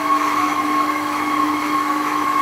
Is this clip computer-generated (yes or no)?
yes